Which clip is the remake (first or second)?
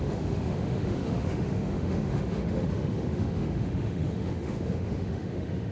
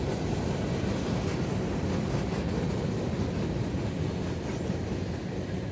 first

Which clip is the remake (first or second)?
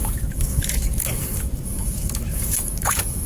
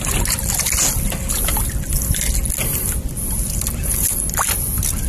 first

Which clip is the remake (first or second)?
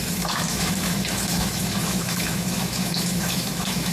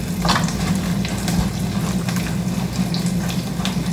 first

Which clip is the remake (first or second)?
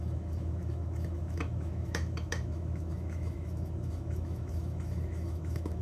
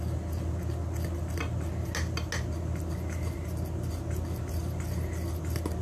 first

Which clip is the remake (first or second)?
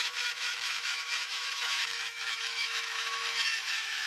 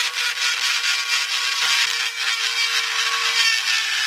first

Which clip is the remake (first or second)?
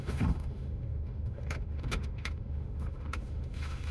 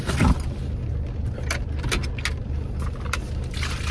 first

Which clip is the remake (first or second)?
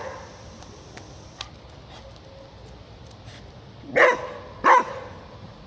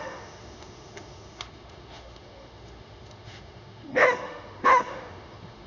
second